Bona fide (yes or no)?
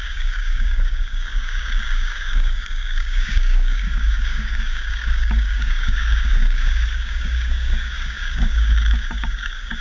no